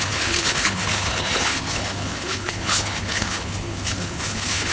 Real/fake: fake